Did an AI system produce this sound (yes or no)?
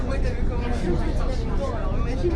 no